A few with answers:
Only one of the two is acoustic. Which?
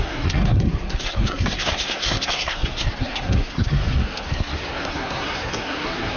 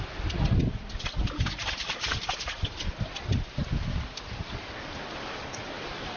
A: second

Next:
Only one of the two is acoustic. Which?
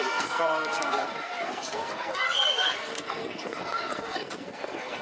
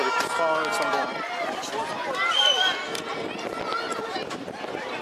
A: second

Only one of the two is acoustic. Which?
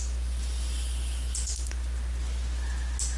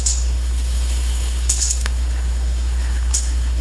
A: first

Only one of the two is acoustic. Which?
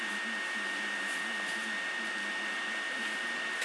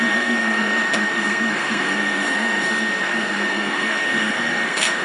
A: first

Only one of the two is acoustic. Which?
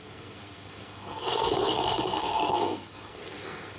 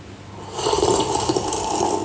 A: second